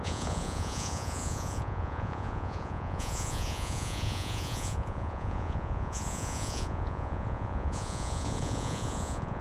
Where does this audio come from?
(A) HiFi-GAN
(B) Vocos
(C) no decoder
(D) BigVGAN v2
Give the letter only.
B